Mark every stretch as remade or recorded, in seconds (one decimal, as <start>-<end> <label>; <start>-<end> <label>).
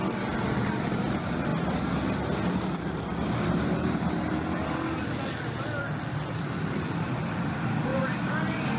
0.0-8.8 recorded